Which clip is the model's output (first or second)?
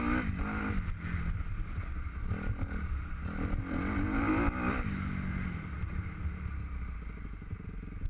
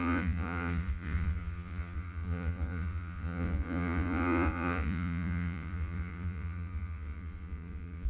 second